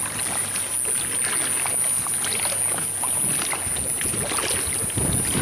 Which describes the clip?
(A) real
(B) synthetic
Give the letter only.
A